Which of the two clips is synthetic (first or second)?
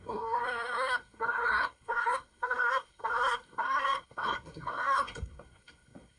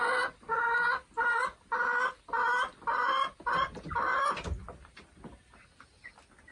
first